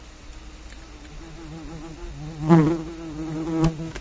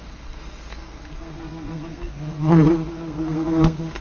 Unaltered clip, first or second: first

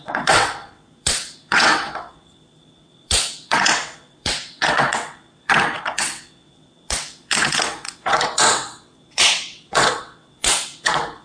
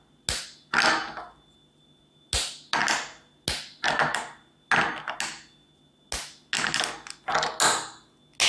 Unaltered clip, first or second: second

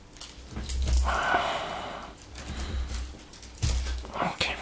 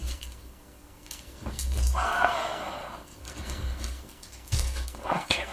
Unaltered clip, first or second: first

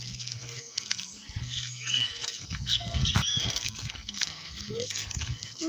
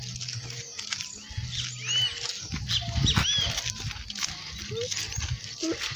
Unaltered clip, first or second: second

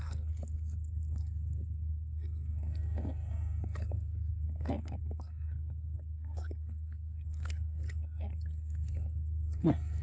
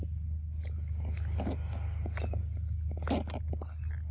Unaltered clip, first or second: second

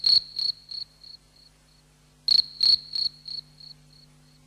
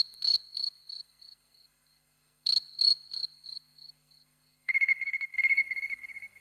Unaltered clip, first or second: first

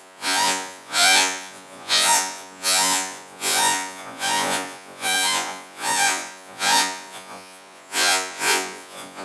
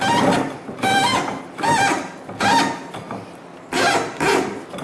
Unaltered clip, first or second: second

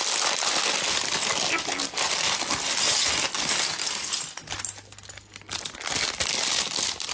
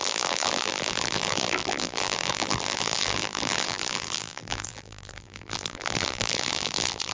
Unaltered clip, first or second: first